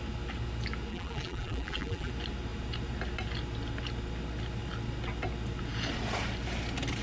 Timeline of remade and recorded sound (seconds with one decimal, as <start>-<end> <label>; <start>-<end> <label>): 0.0-0.9 recorded; 0.9-2.1 remade; 2.1-7.0 recorded